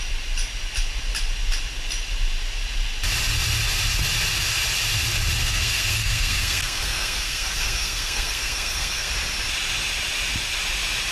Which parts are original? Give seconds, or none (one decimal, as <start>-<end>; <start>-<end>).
0.0-5.4; 9.1-11.1